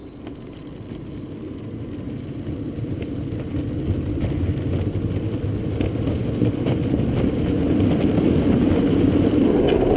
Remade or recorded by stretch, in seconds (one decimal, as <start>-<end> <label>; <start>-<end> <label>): 0.0-10.0 recorded